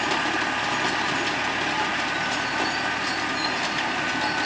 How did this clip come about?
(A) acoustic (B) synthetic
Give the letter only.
A